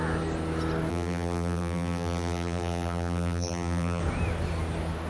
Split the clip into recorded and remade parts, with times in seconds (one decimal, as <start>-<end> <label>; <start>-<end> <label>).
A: 0.0-0.9 recorded; 0.9-4.0 remade; 4.0-5.1 recorded